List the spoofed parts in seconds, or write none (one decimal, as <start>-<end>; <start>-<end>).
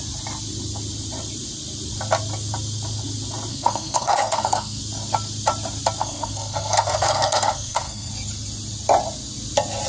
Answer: 3.5-4.8; 6.0-8.1